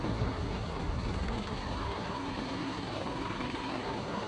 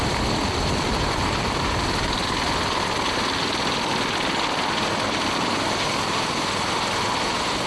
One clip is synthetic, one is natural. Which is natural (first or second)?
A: second